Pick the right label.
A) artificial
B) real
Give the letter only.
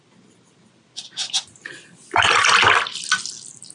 B